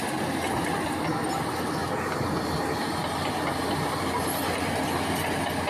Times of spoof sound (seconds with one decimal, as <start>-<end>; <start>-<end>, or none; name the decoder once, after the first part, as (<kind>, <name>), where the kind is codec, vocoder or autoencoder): 1.8-4.2 (vocoder, BigVGAN v2)